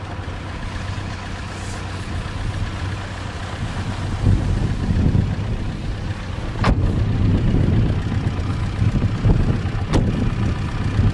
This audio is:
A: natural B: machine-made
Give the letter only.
A